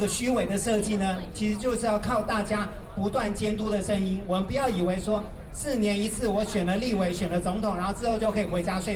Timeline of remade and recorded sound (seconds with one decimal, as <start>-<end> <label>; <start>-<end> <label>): 0.0-1.5 recorded; 1.5-5.6 remade; 5.6-8.1 recorded; 8.1-9.0 remade